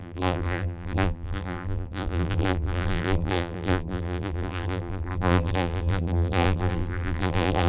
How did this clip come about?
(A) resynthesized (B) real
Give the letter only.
A